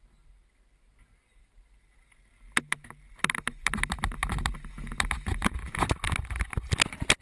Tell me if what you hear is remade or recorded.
recorded